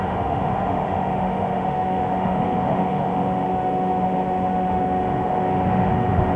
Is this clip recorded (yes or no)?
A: no